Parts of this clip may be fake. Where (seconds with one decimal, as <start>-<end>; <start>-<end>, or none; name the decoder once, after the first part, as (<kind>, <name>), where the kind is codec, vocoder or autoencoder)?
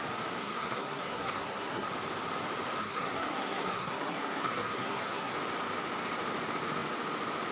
0.4-1.9 (codec, SNAC); 2.8-5.3